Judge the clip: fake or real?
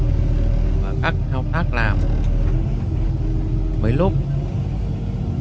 real